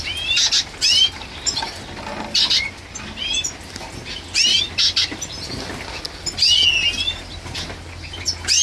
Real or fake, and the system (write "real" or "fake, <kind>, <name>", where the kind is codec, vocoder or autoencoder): real